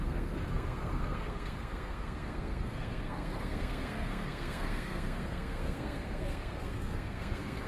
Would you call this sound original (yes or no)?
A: no